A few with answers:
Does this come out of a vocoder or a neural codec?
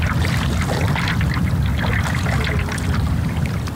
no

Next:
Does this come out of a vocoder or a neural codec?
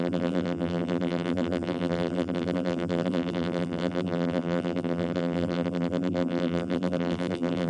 yes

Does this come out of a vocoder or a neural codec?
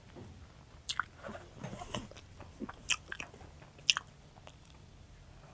no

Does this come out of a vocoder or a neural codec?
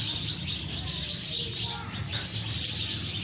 no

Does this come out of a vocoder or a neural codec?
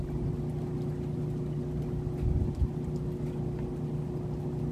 no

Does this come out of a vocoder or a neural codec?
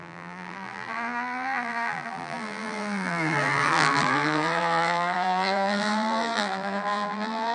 yes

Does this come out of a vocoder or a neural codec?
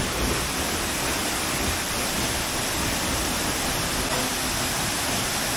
no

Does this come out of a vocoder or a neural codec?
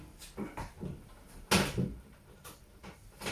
no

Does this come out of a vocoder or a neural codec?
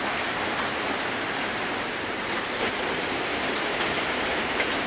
yes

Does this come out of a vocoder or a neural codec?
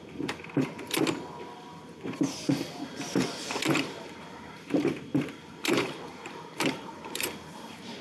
yes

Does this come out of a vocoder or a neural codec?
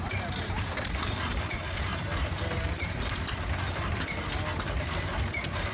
yes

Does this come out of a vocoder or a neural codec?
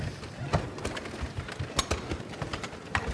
no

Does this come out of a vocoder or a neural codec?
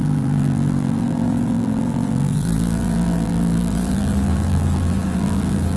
yes